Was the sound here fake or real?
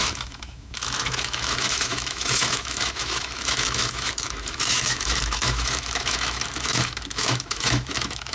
fake